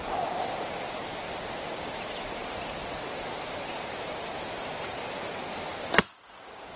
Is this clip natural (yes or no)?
yes